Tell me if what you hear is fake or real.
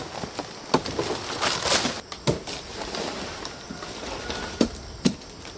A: real